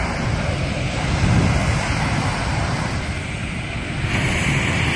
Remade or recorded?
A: recorded